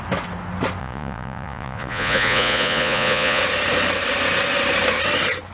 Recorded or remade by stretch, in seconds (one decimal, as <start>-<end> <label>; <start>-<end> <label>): 0.0-0.8 recorded; 0.8-3.4 remade; 3.4-5.5 recorded